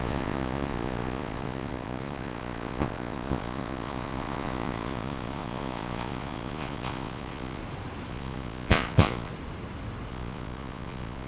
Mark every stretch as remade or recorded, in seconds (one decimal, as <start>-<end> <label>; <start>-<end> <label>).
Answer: 0.0-7.6 remade; 7.6-8.1 recorded; 8.1-9.3 remade; 9.3-10.1 recorded; 10.1-11.3 remade